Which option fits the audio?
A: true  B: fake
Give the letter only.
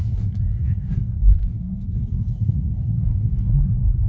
B